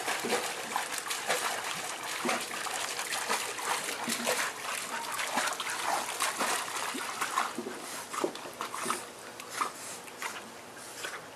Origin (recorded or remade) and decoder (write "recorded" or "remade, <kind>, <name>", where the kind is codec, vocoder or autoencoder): recorded